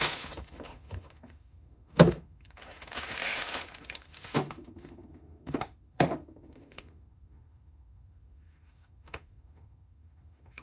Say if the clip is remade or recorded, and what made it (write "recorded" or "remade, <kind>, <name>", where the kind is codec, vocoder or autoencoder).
remade, autoencoder, DAC-VAE